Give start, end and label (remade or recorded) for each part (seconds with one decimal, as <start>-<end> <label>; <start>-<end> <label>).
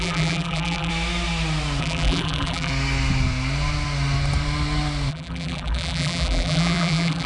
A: 0.0-0.9 remade; 0.9-1.8 recorded; 1.8-2.7 remade; 2.7-5.1 recorded; 5.1-7.3 remade